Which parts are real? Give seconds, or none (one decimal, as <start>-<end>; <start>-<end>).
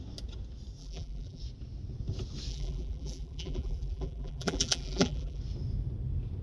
0.0-0.8; 1.4-2.5; 5.4-6.4